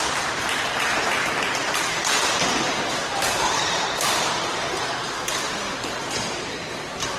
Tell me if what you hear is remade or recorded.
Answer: remade